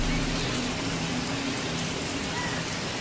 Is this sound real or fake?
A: real